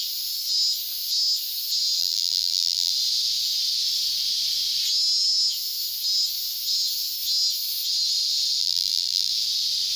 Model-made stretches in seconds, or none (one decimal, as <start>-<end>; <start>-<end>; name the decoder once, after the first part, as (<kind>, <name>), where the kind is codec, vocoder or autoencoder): 2.0-2.9 (vocoder, BigVGAN v2); 8.6-9.3